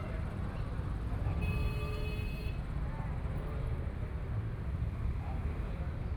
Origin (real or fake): real